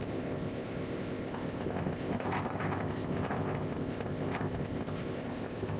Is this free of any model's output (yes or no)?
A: no